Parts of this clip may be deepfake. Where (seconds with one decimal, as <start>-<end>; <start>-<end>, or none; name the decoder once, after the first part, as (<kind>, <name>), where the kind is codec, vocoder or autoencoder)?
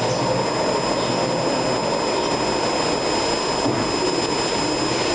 none